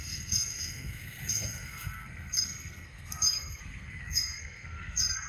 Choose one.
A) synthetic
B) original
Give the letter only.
A